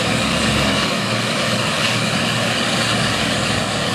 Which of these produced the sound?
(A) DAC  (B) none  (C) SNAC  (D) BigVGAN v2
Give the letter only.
A